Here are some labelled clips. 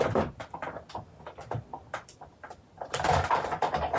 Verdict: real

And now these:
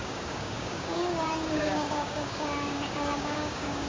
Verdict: fake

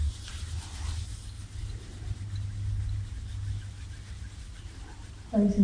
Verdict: real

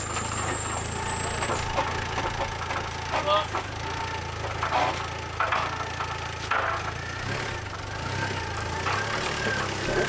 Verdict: real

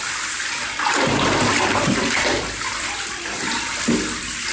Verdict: fake